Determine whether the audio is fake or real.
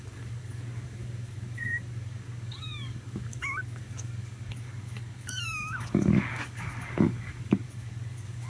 fake